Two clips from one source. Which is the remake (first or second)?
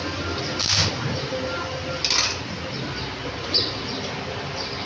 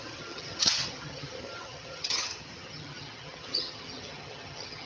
second